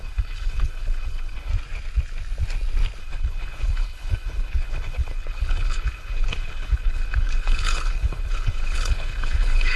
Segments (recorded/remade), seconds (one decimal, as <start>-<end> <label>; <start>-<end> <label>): 0.0-1.5 remade; 1.5-3.0 recorded; 3.0-9.8 remade